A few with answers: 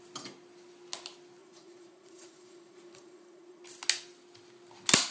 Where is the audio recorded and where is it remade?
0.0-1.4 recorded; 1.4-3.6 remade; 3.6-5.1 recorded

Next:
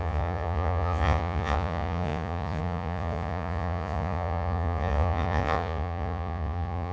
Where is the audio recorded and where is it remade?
0.0-6.9 remade